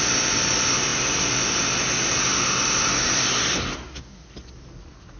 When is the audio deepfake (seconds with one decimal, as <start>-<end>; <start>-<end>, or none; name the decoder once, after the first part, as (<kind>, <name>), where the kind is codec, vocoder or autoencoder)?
none